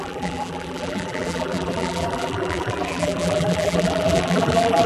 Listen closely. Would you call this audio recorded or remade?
remade